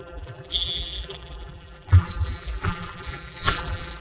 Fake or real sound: fake